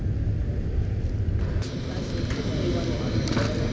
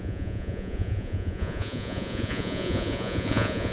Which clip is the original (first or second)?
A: first